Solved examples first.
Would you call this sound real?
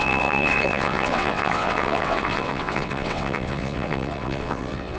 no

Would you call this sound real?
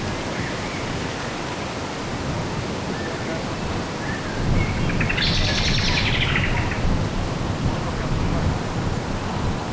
yes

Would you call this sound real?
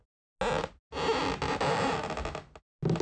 yes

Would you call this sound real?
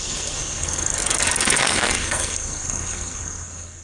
no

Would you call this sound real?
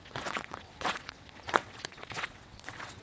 no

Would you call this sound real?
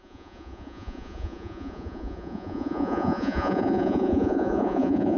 no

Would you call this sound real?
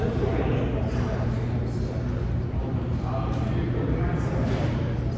yes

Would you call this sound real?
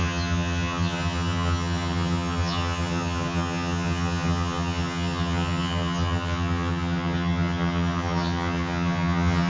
no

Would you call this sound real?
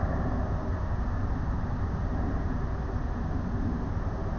yes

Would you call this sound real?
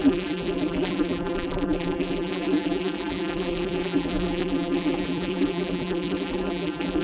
no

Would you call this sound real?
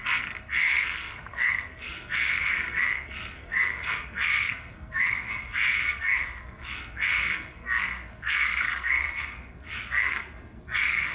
no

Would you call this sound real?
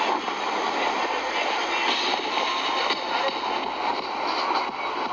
yes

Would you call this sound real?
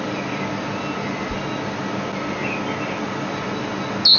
yes